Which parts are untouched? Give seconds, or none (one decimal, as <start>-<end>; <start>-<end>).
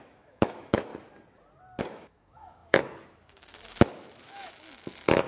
0.9-1.8